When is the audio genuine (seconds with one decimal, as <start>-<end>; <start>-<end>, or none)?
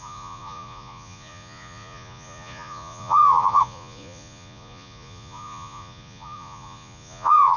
none